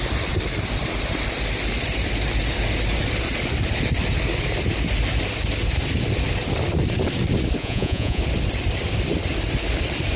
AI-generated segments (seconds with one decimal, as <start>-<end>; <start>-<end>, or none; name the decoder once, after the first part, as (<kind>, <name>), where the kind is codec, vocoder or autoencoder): 7.6-8.2 (vocoder, Vocos)